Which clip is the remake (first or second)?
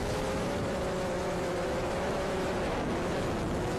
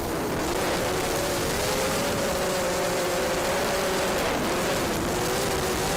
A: first